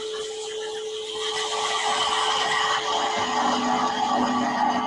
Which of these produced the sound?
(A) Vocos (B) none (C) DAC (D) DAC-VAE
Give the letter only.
B